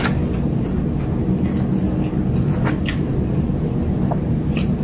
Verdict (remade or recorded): recorded